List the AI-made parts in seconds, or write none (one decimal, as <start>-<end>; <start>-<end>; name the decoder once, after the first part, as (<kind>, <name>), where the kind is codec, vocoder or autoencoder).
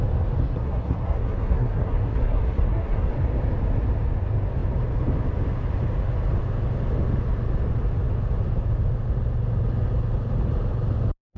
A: 0.4-3.1 (codec, SNAC)